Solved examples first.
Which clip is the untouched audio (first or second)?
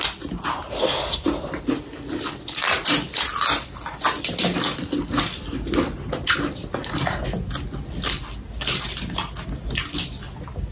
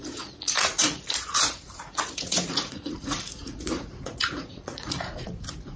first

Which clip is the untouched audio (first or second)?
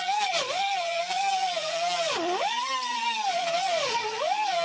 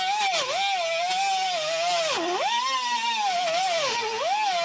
second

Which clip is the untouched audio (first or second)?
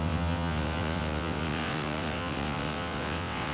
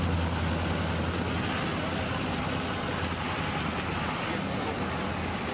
second